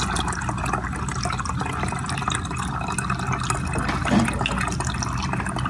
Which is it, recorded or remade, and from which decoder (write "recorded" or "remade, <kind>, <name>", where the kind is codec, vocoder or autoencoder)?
recorded